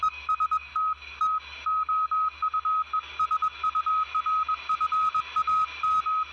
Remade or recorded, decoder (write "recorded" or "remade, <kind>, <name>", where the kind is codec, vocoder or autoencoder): recorded